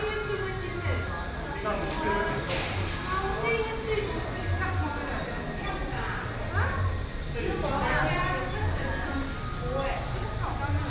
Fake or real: real